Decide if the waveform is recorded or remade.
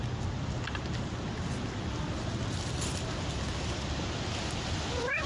recorded